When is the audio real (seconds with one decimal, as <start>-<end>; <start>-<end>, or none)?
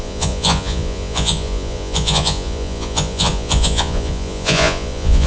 none